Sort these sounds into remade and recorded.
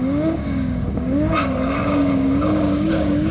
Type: remade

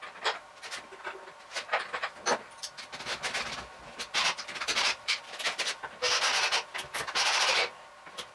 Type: recorded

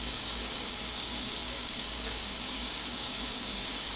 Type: remade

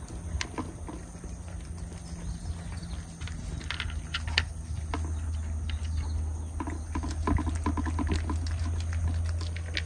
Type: recorded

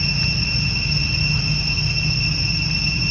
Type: recorded